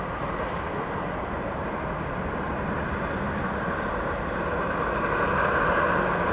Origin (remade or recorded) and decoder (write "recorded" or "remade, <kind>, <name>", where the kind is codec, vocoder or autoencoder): recorded